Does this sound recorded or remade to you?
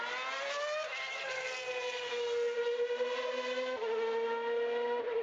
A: recorded